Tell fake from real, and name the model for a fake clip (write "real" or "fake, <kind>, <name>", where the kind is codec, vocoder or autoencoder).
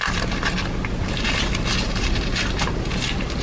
real